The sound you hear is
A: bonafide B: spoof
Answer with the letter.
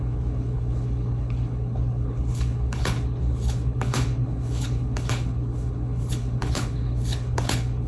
B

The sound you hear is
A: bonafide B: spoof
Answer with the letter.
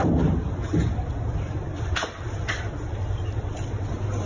B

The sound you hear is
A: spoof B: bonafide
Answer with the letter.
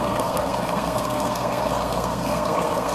A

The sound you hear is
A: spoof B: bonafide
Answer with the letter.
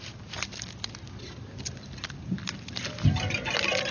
B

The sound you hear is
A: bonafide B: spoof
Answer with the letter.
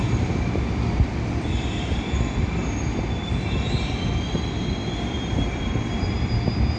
B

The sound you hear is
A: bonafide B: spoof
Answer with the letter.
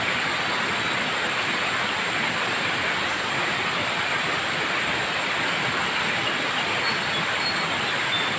A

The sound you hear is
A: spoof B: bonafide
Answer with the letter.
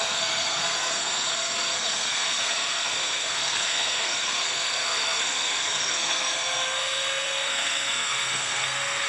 A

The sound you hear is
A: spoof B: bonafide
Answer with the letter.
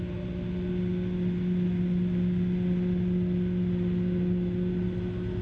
B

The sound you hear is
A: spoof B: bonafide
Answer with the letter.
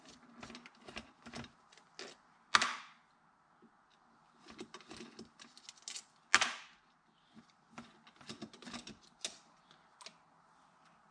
B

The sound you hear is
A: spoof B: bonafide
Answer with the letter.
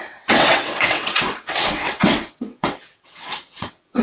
A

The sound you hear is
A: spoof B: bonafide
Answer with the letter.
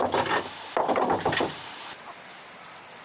B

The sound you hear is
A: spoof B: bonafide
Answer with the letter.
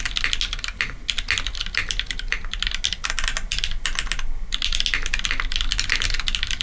B